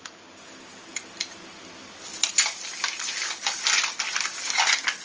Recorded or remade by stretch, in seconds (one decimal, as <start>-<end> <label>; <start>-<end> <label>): 0.0-5.0 recorded